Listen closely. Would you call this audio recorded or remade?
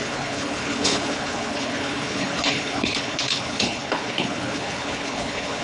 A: remade